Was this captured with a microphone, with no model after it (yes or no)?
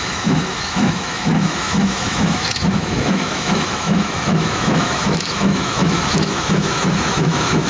no